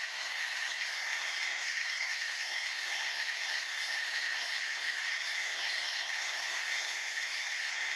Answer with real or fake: fake